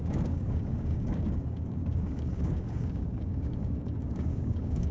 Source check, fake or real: fake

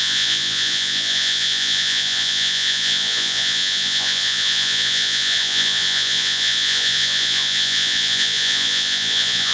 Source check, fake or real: fake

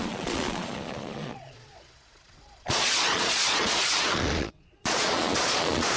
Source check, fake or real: fake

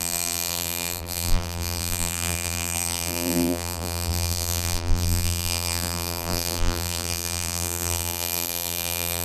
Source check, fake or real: fake